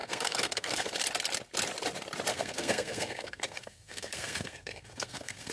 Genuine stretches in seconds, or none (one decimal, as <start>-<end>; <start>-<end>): 0.9-2.3